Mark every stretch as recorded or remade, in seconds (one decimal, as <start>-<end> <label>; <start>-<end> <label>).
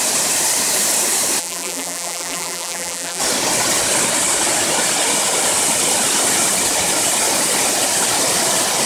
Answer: 0.0-1.4 recorded; 1.4-3.2 remade; 3.2-8.9 recorded